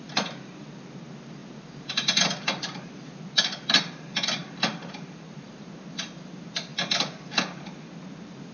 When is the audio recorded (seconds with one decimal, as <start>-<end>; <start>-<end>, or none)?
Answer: 0.0-8.5